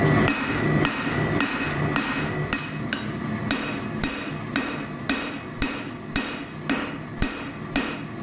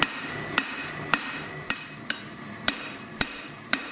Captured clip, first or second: first